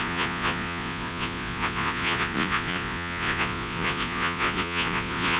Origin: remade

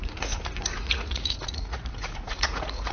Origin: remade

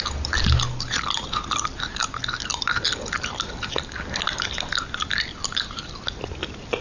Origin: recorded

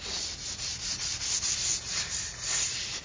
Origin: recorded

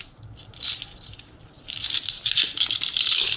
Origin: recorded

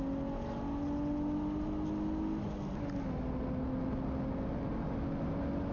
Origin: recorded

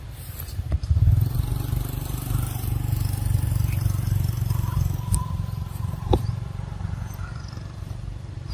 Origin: remade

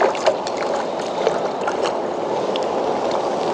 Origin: recorded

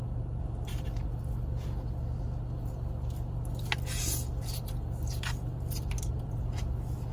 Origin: recorded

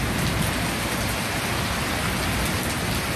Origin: recorded